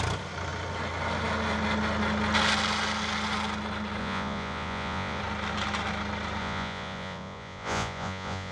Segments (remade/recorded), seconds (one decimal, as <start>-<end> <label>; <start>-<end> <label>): 0.0-4.0 recorded; 4.0-5.2 remade; 5.2-6.4 recorded; 6.4-8.5 remade